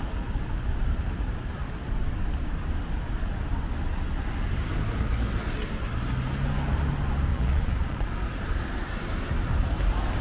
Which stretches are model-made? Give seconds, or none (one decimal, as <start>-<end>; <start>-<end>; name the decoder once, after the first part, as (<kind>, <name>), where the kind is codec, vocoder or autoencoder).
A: 7.3-8.1 (vocoder, Vocos)